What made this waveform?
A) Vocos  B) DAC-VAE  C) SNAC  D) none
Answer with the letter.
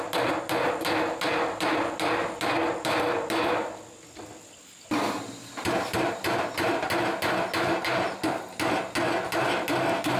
D